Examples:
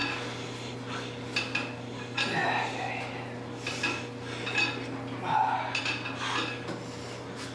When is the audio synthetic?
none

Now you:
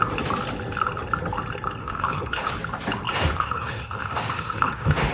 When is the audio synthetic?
1.8-2.5 (autoencoder, DAC-VAE); 3.1-5.1

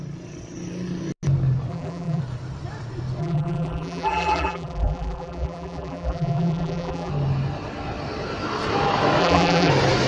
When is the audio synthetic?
1.7-2.2 (vocoder, BigVGAN v2); 3.2-7.1; 9.2-9.7

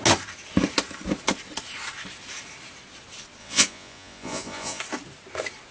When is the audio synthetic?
3.4-4.8 (vocoder, Vocos)

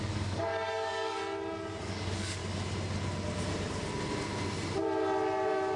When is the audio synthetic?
0.0-1.2 (codec, DAC); 1.8-2.4

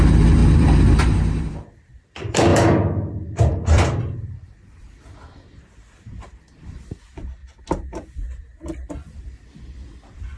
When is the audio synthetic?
0.0-7.4 (vocoder, BigVGAN v2); 8.1-10.4

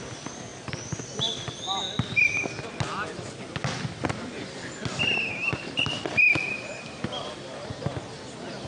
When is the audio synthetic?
none